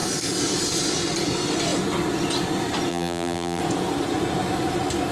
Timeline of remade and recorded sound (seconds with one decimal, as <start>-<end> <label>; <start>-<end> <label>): 0.0-2.9 recorded; 2.9-3.6 remade; 3.6-5.1 recorded